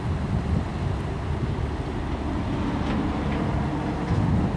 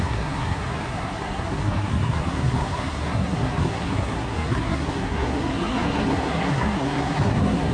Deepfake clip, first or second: second